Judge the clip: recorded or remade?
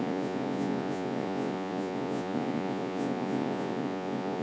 remade